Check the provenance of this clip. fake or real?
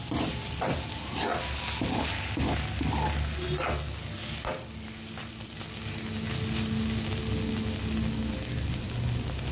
real